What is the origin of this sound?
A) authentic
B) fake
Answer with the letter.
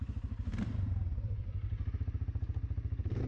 B